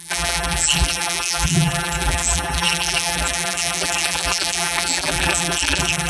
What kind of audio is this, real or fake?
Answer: fake